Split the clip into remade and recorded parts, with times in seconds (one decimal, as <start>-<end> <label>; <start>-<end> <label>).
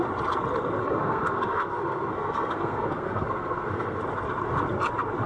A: 0.0-0.8 recorded; 0.8-4.0 remade; 4.0-5.3 recorded